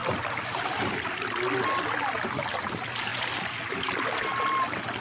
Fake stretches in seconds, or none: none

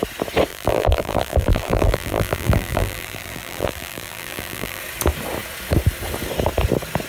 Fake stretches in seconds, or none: 0.5-4.8

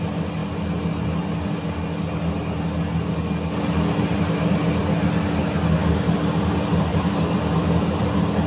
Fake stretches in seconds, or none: 5.8-6.4; 6.9-8.0